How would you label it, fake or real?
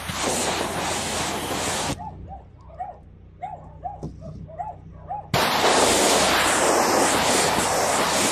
real